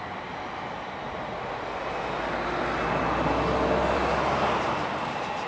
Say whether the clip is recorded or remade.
recorded